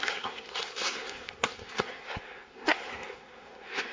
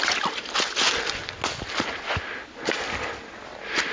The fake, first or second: first